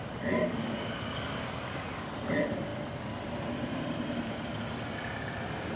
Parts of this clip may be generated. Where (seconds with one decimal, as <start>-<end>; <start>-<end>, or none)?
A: 0.4-2.1